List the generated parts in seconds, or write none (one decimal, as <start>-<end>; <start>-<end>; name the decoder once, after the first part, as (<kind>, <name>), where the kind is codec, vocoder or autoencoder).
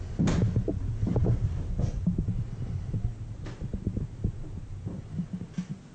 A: none